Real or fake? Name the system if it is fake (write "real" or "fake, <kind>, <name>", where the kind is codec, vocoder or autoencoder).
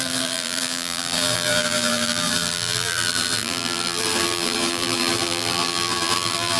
fake, vocoder, BigVGAN v2